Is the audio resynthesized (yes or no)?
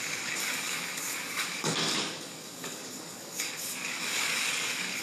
yes